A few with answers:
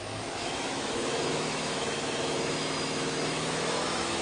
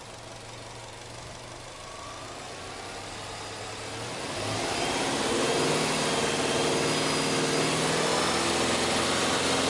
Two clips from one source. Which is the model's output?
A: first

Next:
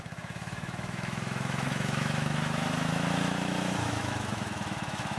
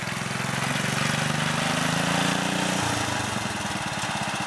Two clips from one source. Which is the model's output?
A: first